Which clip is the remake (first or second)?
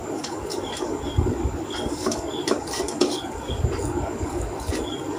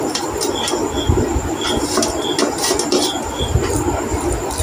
first